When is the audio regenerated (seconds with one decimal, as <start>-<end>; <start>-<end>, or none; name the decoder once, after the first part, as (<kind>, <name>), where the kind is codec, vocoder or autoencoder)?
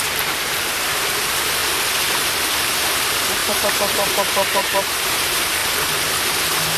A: 0.0-1.6 (vocoder, BigVGAN v2); 2.5-5.6; 6.2-6.8